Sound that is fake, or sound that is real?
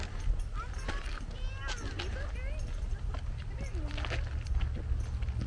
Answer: real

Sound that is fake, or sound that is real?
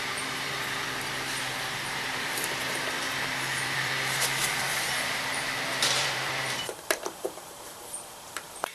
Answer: fake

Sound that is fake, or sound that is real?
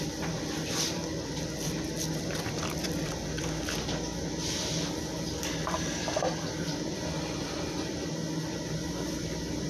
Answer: fake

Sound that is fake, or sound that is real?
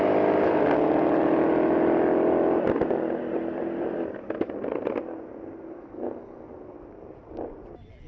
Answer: real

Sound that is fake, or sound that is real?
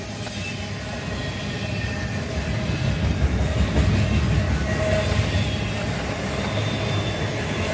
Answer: real